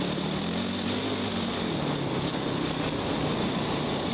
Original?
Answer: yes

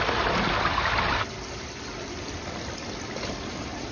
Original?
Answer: yes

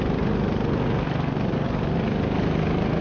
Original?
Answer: yes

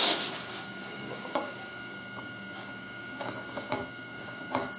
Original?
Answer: no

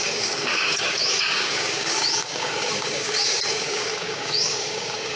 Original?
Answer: no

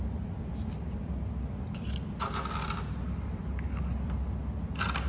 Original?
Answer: yes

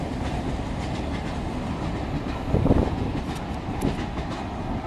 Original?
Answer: yes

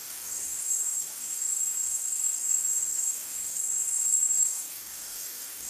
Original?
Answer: no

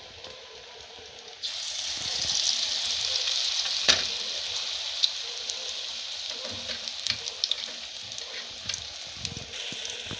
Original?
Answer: yes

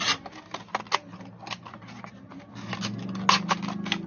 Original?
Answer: yes